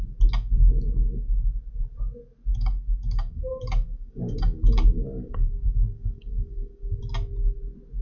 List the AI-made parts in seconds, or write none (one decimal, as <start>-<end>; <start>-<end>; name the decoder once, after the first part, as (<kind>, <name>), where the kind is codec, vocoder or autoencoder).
2.5-7.0 (codec, DAC)